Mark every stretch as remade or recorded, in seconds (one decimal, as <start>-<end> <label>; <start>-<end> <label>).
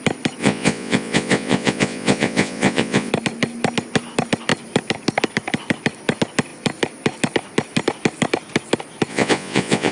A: 0.0-0.4 recorded; 0.4-3.1 remade; 3.1-9.1 recorded; 9.1-9.9 remade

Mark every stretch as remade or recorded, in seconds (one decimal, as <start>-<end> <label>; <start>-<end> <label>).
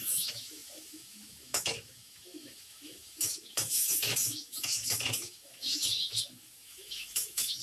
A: 0.0-7.6 remade